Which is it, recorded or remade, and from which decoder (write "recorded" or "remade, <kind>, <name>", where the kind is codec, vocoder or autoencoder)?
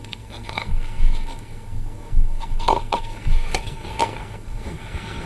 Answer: remade, codec, SNAC